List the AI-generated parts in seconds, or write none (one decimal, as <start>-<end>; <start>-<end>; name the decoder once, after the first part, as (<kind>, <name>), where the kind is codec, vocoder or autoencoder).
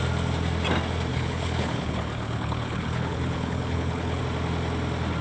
1.1-4.2 (codec, HILCodec)